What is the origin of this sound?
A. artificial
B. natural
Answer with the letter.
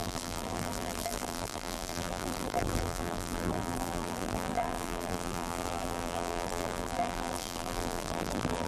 A